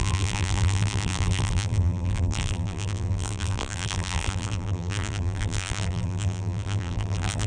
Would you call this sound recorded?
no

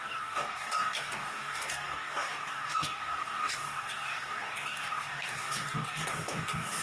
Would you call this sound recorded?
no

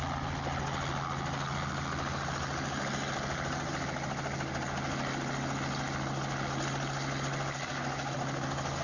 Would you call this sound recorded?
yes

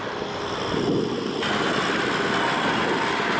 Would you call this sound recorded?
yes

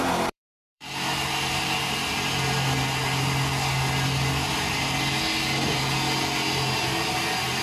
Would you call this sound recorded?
no